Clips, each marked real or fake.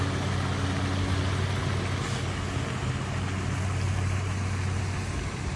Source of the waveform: real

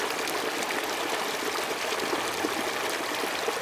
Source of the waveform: real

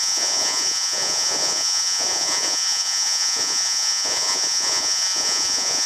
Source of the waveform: fake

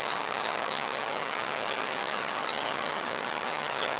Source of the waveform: fake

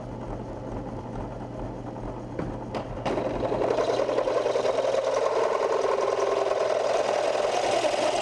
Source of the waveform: real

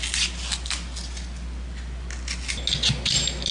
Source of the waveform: real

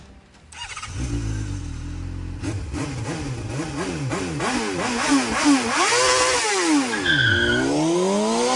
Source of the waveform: real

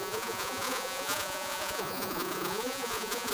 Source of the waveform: fake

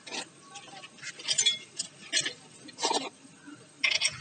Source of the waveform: real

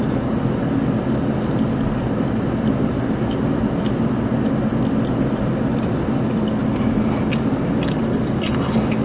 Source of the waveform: real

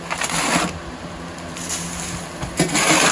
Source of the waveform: real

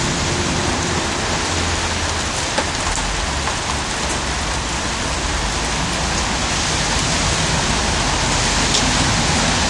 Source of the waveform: real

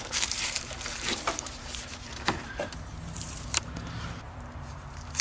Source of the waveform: fake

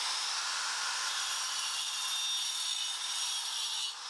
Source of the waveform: real